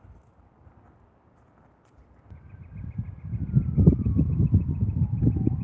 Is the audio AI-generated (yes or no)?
no